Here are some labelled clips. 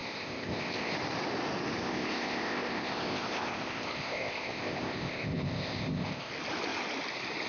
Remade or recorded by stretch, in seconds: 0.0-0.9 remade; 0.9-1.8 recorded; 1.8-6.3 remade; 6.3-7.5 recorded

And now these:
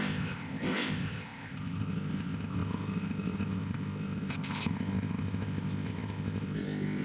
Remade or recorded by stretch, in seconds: 0.0-7.0 remade

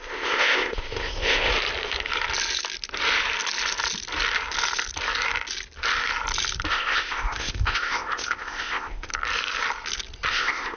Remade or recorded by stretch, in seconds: 0.0-1.5 remade; 1.5-6.7 recorded; 6.7-9.1 remade; 9.1-10.3 recorded; 10.3-10.8 remade

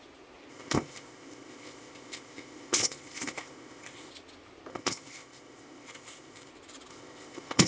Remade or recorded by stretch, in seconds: 0.0-0.5 recorded; 0.5-4.1 remade; 4.1-4.7 recorded; 4.7-6.5 remade; 6.5-6.9 recorded; 6.9-7.7 remade

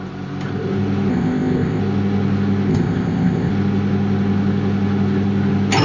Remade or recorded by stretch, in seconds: 0.0-1.1 recorded; 1.1-1.8 remade; 1.8-2.7 recorded; 2.7-3.5 remade; 3.5-5.8 recorded

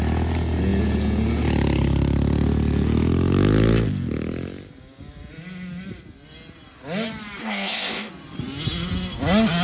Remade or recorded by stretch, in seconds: 0.0-7.4 recorded; 7.4-8.1 remade; 8.1-9.6 recorded

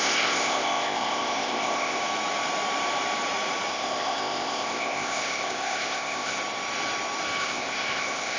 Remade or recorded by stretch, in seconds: 0.0-2.0 remade; 2.0-3.7 recorded; 3.7-6.4 remade; 6.4-7.4 recorded; 7.4-8.4 remade

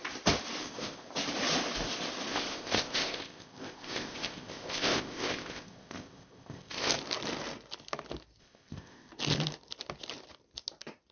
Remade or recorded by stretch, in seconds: 0.0-0.6 recorded; 0.6-1.1 remade; 1.1-2.3 recorded; 2.3-6.9 remade; 6.9-8.4 recorded; 8.4-9.1 remade; 9.1-11.1 recorded